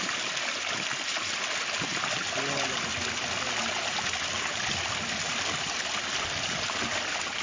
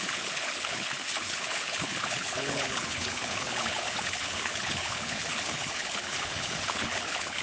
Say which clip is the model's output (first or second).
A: second